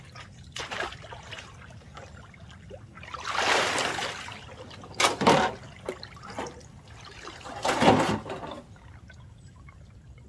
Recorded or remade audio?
recorded